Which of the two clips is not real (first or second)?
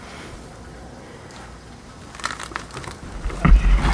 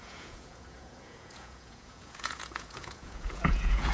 second